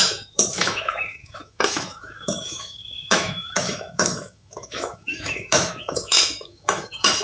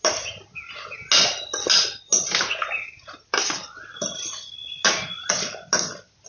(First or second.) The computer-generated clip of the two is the first